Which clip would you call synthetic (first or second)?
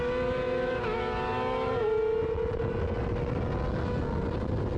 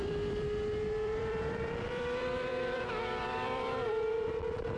second